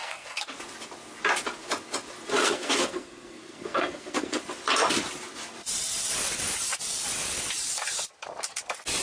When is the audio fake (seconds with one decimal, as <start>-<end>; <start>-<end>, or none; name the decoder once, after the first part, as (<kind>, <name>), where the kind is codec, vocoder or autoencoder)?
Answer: 0.0-0.6 (codec, SNAC); 2.4-4.4